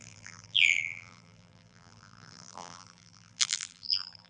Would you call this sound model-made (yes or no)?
yes